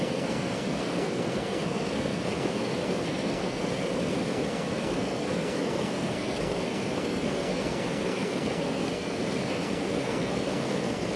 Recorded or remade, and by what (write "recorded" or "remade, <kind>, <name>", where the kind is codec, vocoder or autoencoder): remade, codec, SNAC